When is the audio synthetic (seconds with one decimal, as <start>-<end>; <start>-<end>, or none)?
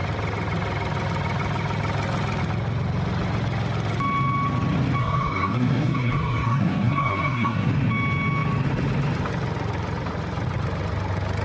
5.0-7.7